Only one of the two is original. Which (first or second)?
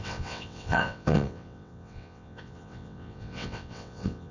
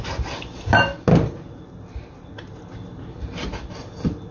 second